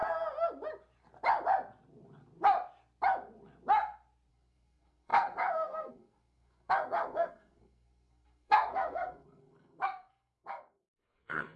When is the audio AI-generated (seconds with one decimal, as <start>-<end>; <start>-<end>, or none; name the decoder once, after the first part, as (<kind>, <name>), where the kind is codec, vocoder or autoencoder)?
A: 4.3-11.6 (codec, SNAC)